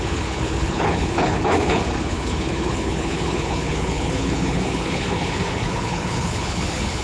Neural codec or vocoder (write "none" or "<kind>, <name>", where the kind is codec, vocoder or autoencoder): codec, HILCodec